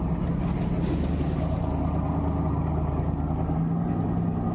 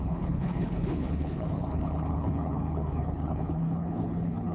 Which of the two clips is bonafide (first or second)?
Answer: first